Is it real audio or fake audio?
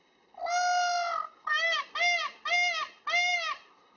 real